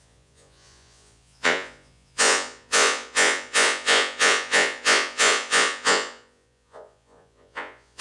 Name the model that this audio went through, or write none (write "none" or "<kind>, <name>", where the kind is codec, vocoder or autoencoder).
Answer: vocoder, Vocos